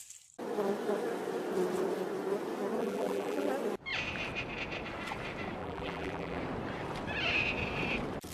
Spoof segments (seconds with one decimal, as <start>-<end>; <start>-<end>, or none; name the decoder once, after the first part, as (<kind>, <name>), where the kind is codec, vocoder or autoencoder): 2.8-3.5 (vocoder, BigVGAN v2); 5.6-6.4